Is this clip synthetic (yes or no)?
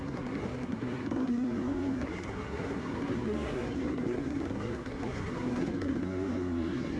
yes